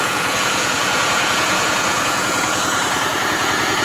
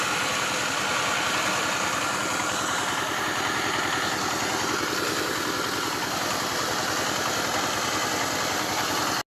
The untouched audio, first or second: second